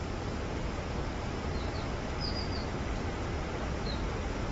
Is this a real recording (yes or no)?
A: no